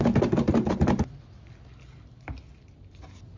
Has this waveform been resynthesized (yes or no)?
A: no